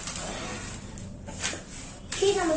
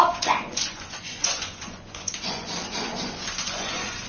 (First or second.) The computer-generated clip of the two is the second